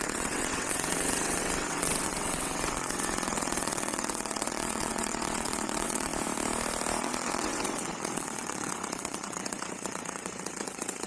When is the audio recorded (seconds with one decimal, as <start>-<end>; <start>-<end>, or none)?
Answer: 6.1-7.0